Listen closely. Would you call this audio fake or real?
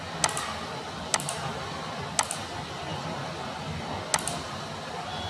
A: real